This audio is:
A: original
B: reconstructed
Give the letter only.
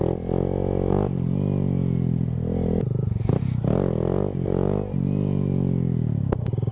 A